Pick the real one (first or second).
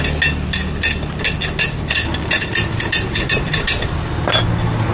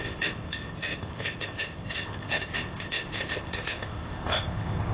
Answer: first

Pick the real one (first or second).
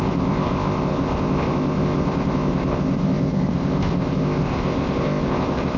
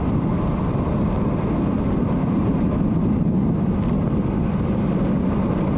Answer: second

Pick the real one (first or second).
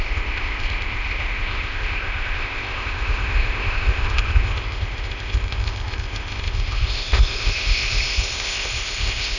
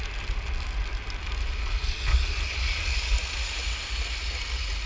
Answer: second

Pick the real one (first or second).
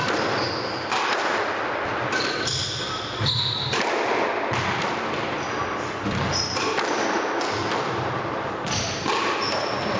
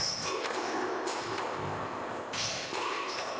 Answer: first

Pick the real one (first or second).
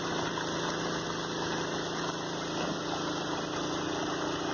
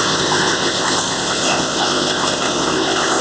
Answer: first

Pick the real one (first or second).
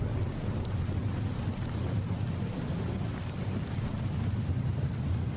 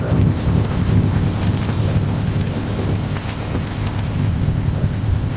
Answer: first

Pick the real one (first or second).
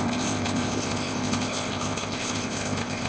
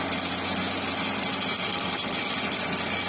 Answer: second